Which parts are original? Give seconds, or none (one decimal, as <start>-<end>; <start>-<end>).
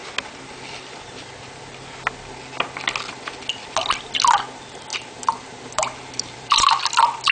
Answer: 0.0-4.9; 6.8-7.3